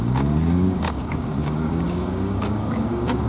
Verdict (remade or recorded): remade